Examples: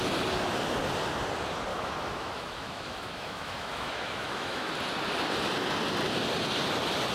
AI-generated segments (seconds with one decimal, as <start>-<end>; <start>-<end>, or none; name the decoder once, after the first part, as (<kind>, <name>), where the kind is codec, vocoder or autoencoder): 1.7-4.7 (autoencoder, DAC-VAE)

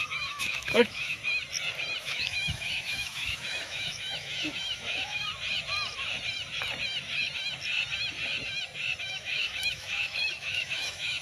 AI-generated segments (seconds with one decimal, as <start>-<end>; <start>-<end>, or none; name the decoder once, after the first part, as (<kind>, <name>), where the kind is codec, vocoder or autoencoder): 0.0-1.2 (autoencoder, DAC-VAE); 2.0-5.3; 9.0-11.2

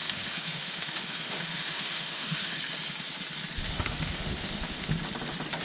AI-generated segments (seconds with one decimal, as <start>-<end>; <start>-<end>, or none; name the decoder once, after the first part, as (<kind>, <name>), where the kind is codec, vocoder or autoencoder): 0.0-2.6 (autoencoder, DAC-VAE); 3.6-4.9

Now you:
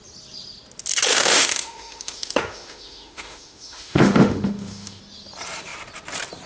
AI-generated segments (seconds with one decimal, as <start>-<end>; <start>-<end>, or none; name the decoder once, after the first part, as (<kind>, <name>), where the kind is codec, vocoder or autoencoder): 1.1-5.0 (autoencoder, DAC-VAE)

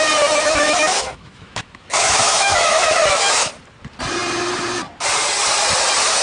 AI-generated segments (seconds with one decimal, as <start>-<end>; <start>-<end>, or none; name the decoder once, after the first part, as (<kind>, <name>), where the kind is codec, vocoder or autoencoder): 0.4-3.5 (autoencoder, DAC-VAE)

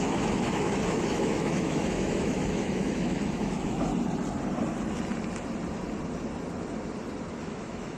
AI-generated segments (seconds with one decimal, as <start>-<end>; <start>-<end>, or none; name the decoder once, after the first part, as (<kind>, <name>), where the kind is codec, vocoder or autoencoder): 0.0-3.9 (autoencoder, DAC-VAE); 7.4-8.0

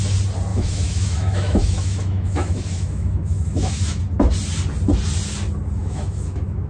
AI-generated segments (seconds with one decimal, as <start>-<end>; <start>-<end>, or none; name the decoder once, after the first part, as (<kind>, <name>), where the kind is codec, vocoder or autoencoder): 0.5-4.0 (autoencoder, DAC-VAE); 5.8-6.7